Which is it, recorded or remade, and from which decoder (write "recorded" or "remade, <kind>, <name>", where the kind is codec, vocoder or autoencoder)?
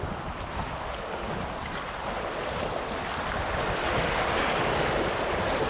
recorded